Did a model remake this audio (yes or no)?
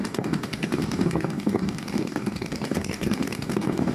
yes